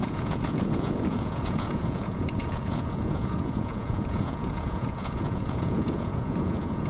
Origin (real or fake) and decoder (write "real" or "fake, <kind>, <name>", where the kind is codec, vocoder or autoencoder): fake, vocoder, Vocos